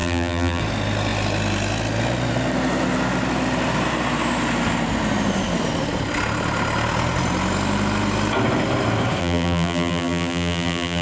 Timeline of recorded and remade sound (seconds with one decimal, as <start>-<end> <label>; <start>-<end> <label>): 0.0-0.6 remade; 0.6-9.2 recorded; 9.2-11.0 remade